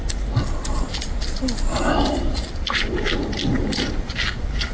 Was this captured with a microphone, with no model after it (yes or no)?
yes